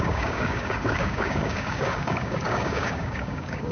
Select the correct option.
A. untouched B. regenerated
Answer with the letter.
B